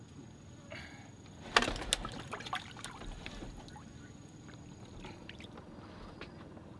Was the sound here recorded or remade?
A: recorded